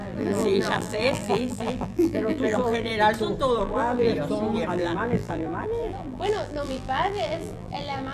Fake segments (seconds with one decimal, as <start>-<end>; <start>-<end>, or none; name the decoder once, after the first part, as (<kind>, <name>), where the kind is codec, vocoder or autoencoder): 0.0-2.9 (vocoder, BigVGAN v2); 3.6-4.1; 4.7-8.1